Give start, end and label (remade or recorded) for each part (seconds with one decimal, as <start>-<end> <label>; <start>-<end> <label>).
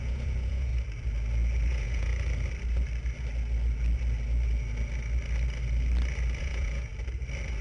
0.0-0.7 remade; 0.7-1.6 recorded; 1.6-2.1 remade; 2.1-6.4 recorded; 6.4-6.9 remade; 6.9-7.6 recorded